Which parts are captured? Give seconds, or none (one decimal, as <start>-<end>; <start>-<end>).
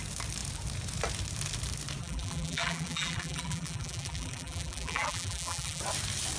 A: 0.0-2.0; 5.8-6.4